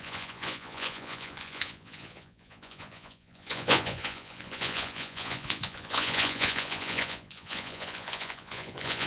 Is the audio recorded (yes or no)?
no